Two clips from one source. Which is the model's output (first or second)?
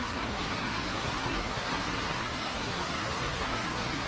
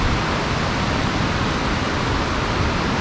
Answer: first